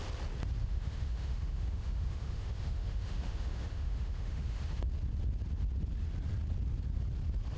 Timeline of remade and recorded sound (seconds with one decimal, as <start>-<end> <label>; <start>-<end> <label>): 0.0-0.6 recorded; 0.6-4.9 remade; 4.9-7.6 recorded